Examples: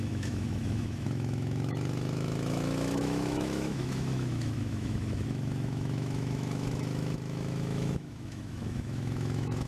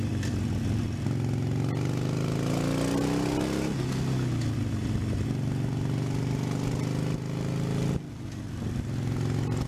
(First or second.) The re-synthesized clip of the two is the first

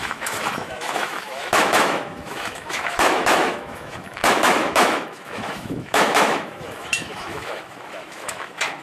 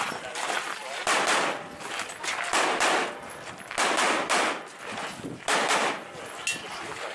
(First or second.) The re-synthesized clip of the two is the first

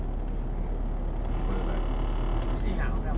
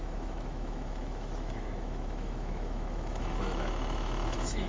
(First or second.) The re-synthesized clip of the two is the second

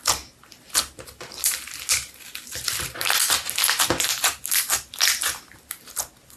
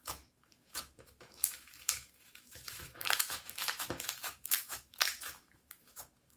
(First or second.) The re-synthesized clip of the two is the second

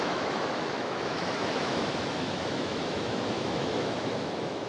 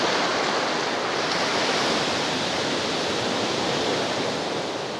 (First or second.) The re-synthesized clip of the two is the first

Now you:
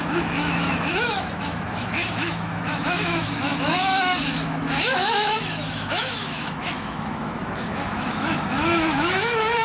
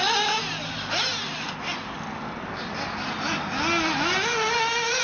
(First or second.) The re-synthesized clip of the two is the first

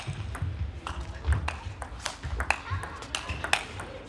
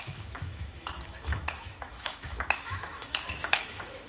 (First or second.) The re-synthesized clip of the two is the second